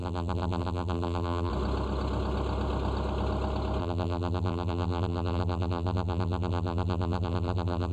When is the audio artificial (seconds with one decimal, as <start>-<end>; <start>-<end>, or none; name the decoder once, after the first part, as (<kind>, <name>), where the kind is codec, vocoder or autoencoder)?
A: 0.0-1.5 (vocoder, BigVGAN v2); 3.8-7.9